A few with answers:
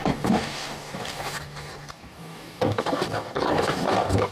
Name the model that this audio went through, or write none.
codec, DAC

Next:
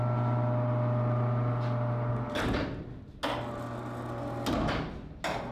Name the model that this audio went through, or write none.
none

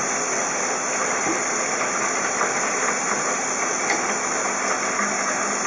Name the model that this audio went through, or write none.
none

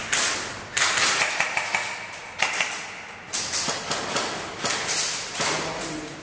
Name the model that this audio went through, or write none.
none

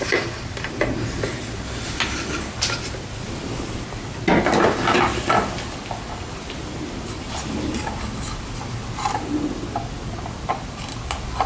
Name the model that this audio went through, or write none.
none